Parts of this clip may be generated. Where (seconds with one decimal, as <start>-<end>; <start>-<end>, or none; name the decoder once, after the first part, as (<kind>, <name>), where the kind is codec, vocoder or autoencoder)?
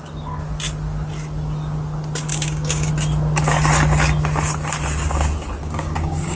2.3-2.9 (codec, DAC); 5.6-6.4